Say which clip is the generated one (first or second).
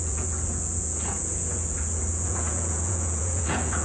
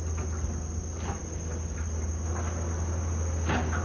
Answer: first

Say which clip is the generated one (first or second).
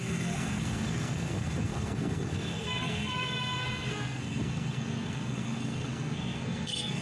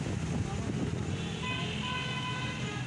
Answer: first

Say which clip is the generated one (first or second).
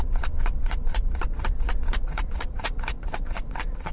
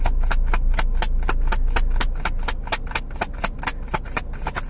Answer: first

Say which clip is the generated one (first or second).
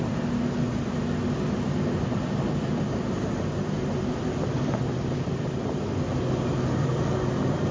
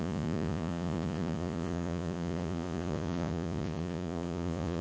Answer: second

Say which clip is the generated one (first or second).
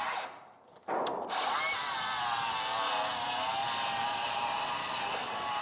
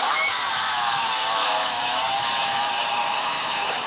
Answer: second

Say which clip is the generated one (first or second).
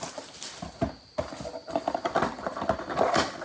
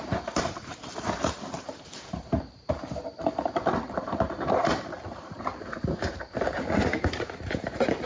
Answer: second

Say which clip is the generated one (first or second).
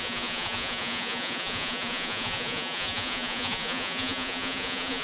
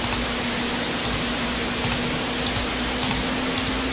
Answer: first